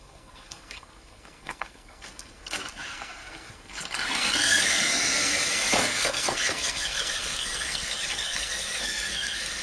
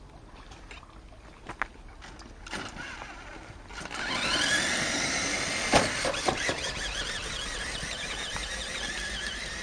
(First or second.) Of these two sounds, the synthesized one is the first